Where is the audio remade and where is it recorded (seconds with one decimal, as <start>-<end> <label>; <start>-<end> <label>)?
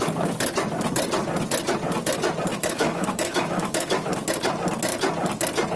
0.0-2.5 recorded; 2.5-4.1 remade; 4.1-5.8 recorded